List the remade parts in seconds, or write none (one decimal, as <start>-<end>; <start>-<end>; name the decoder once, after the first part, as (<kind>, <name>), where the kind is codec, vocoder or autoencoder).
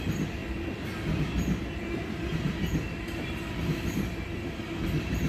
0.0-0.4 (vocoder, BigVGAN v2); 3.1-5.3